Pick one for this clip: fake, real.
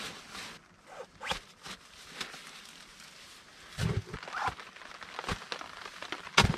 real